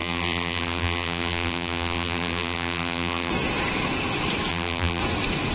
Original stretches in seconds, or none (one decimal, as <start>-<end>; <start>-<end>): 3.3-4.5; 5.0-5.5